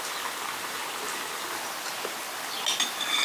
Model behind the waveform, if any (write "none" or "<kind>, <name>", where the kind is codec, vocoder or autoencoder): none